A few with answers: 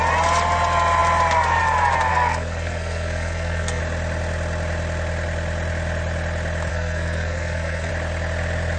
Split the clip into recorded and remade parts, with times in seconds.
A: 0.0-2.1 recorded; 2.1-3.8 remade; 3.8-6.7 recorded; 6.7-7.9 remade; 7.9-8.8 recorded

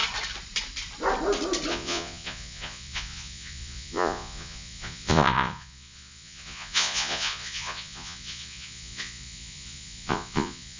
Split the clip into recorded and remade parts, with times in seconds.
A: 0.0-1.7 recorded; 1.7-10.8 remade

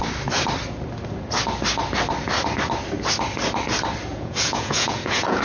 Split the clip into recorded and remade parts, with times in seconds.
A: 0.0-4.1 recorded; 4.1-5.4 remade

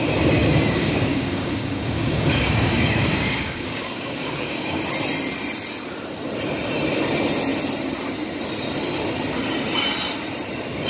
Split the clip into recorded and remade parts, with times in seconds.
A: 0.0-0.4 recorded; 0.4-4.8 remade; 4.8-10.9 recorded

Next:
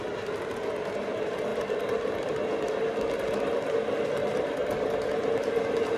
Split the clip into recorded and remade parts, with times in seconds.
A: 0.0-6.0 recorded

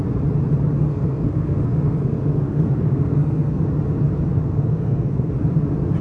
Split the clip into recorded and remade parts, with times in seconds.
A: 0.0-0.9 recorded; 0.9-3.6 remade; 3.6-4.4 recorded; 4.4-5.3 remade; 5.3-6.0 recorded

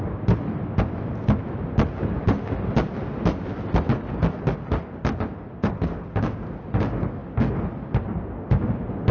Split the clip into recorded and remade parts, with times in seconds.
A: 0.0-9.1 recorded

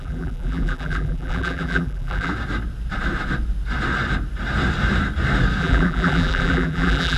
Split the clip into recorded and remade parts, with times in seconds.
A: 0.0-2.3 remade; 2.3-5.6 recorded; 5.6-7.2 remade